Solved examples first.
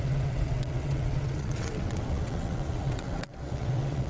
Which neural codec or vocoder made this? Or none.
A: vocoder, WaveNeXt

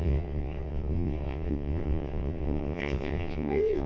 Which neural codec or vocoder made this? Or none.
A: vocoder, WaveNeXt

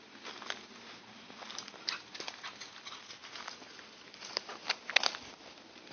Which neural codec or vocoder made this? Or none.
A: none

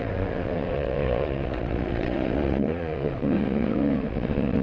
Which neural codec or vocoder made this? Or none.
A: vocoder, WaveNeXt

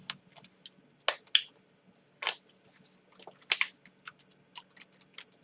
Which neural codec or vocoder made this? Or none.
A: none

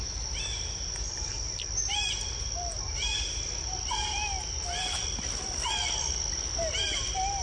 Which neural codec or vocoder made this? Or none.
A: none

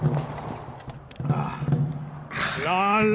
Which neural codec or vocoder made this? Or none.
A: none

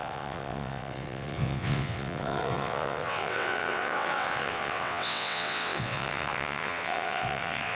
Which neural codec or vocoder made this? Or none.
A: vocoder, WaveNeXt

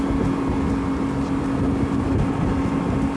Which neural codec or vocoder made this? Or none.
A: none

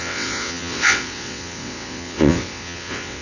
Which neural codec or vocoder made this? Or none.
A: vocoder, WaveNeXt